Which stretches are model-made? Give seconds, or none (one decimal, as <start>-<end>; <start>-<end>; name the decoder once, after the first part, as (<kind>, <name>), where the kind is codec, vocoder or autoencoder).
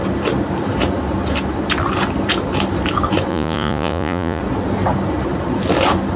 3.3-4.4 (vocoder, Vocos)